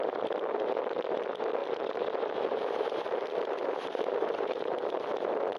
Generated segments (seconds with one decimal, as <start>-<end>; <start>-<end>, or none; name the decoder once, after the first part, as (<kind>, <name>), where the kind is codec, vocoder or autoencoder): 1.6-5.0 (vocoder, BigVGAN v2)